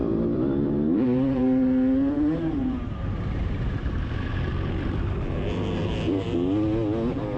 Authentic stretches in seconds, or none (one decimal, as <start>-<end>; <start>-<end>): 3.5-7.4